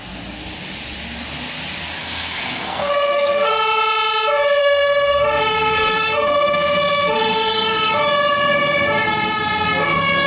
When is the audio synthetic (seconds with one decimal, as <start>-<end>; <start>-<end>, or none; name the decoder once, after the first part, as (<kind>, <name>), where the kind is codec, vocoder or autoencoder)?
2.0-3.5 (codec, SNAC); 4.6-7.9